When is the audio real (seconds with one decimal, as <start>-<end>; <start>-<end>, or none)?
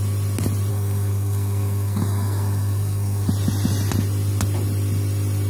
0.0-0.7; 3.3-5.5